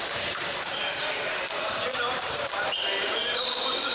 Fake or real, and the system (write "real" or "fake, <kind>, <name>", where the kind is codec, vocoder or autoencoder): fake, vocoder, BigVGAN v2